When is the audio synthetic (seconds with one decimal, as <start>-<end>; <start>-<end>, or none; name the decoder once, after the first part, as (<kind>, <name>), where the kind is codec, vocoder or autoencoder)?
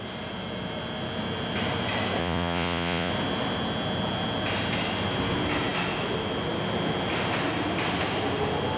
2.2-3.1 (vocoder, Vocos)